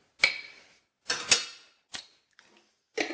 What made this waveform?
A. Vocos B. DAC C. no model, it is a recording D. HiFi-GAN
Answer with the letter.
C